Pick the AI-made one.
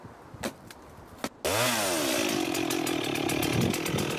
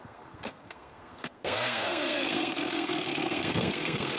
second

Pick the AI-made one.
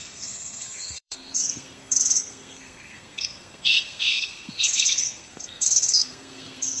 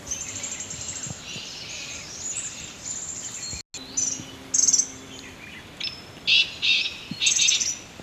first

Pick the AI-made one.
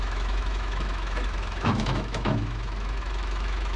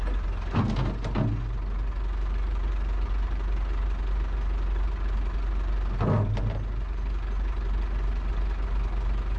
first